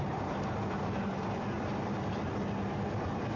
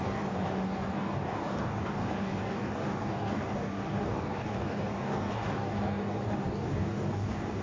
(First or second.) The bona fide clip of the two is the first